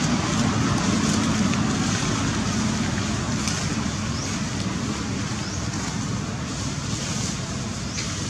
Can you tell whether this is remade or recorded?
recorded